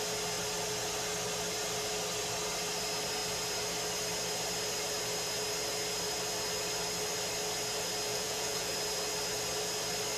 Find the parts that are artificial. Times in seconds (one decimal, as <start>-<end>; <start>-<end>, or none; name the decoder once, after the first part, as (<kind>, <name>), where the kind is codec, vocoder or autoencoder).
8.1-8.7 (vocoder, Vocos)